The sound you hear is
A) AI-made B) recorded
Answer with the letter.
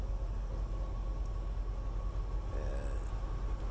B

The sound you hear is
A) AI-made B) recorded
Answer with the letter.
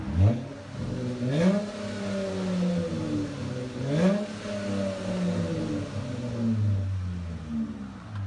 B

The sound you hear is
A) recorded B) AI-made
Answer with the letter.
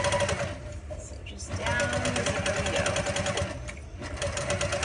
A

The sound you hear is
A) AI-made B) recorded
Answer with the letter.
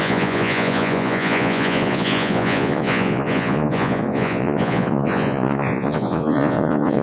A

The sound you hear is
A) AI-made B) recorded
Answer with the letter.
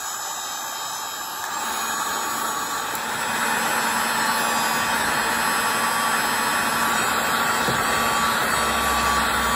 B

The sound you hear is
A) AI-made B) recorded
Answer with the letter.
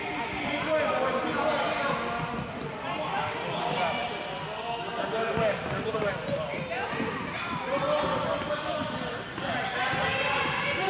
B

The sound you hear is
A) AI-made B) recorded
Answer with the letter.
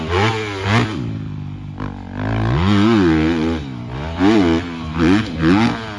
B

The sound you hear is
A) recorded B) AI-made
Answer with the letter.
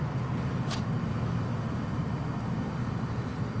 A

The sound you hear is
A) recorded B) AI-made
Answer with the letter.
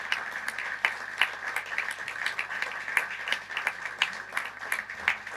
A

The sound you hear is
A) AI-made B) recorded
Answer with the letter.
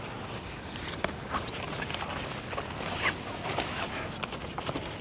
B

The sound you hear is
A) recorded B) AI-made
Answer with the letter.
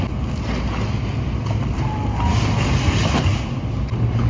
A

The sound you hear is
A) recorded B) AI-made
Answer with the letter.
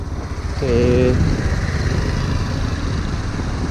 A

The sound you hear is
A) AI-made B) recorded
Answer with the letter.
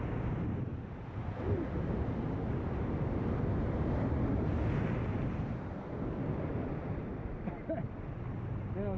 B